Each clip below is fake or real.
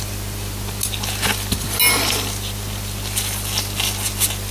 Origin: real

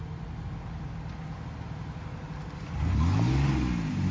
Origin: real